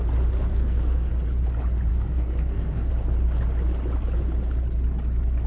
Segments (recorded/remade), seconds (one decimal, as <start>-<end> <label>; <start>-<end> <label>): 0.0-0.5 recorded; 0.5-1.1 remade; 1.1-1.9 recorded; 1.9-2.9 remade; 2.9-5.5 recorded